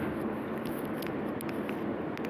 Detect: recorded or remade recorded